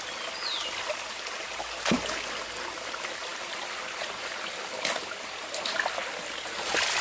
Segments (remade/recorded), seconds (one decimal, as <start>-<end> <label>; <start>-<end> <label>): 0.0-7.0 recorded